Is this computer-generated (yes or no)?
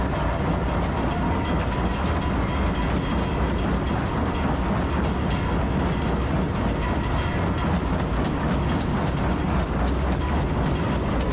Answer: no